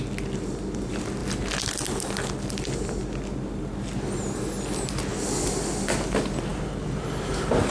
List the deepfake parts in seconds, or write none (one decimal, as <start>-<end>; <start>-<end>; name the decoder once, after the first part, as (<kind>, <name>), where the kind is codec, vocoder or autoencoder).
none